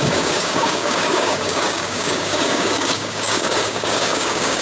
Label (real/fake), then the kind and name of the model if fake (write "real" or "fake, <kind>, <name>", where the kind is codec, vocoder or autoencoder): fake, codec, DAC